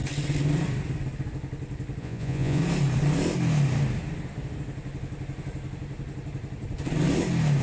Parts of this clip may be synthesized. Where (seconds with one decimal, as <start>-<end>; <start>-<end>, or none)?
2.0-2.6